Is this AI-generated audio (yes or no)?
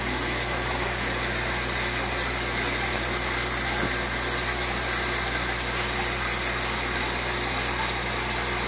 no